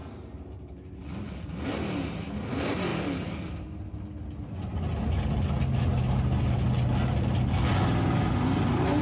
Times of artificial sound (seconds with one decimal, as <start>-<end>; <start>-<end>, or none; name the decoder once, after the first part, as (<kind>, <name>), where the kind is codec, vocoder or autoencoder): none